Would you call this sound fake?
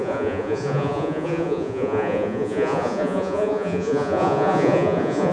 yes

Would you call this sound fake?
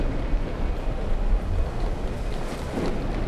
no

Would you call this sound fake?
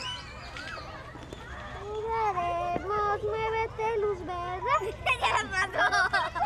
no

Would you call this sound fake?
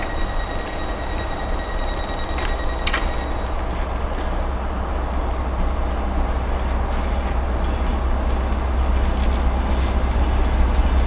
no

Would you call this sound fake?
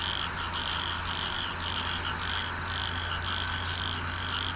no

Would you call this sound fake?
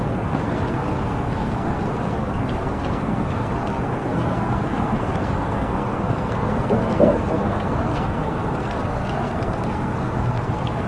yes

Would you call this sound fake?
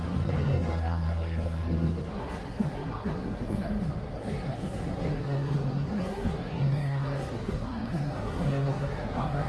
yes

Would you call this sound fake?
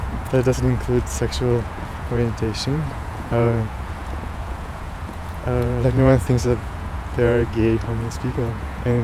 yes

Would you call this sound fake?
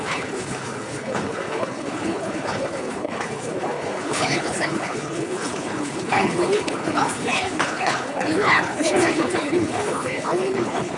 yes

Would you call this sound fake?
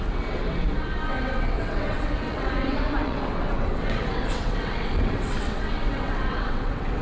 yes